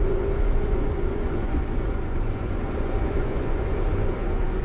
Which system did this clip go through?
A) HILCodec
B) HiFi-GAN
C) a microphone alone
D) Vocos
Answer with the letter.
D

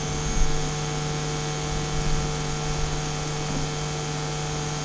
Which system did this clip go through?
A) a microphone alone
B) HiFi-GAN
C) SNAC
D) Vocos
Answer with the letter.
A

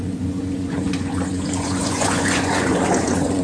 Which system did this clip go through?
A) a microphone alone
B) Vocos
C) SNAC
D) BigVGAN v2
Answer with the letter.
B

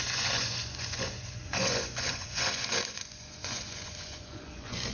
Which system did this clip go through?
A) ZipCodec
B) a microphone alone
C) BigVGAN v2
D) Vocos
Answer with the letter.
D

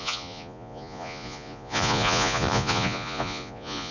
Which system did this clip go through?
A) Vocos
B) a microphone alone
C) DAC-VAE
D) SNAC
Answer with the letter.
A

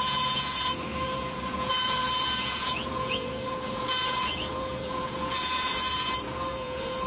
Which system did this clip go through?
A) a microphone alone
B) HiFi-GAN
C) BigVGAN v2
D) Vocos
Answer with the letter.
D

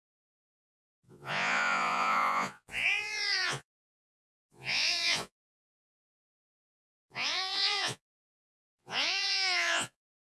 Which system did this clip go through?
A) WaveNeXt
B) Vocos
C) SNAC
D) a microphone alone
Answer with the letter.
B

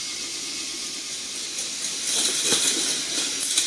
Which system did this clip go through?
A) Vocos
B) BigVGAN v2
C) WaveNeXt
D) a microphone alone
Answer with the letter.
D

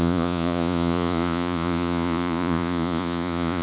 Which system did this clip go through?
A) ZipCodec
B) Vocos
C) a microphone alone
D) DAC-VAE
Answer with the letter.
B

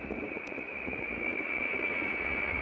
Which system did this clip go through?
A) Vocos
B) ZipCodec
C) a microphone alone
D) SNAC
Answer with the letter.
A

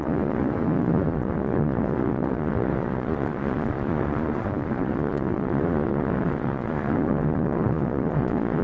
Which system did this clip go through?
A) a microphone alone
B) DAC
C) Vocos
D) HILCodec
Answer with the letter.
C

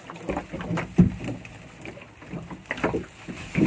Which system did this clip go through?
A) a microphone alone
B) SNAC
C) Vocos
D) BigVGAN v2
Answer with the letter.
A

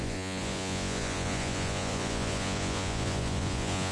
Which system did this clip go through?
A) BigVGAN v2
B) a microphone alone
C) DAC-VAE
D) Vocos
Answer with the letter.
D